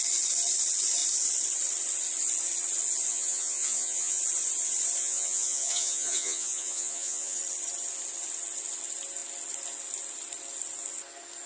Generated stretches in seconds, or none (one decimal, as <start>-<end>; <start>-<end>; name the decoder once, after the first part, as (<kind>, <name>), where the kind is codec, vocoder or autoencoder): 3.1-4.2 (vocoder, Vocos); 5.0-7.4